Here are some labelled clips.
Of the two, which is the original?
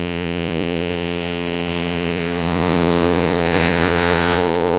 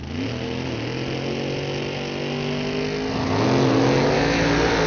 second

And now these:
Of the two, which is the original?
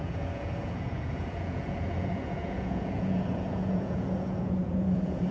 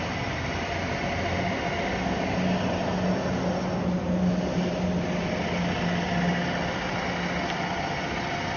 second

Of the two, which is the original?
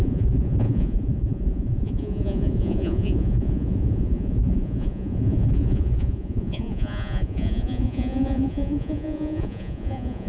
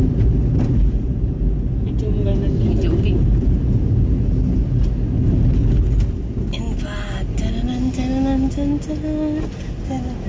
second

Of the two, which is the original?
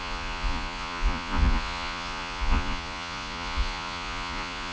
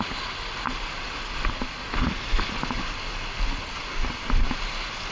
second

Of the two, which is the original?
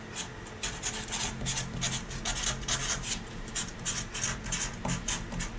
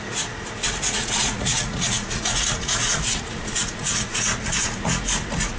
first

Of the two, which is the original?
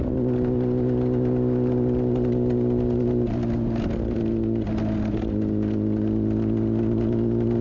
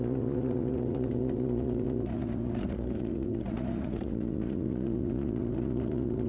first